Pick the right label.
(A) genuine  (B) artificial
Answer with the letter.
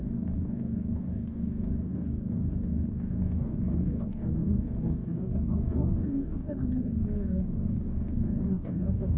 B